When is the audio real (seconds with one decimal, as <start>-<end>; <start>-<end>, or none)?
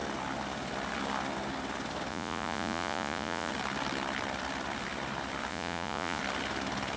0.0-2.1; 3.5-5.5; 6.2-7.0